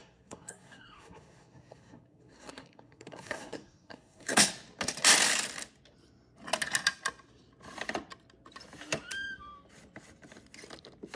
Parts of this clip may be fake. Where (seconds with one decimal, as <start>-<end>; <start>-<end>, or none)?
0.0-4.5